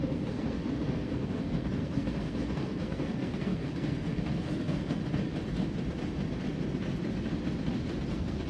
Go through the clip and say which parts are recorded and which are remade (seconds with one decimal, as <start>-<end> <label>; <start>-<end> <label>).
0.0-5.0 remade; 5.0-8.1 recorded; 8.1-8.5 remade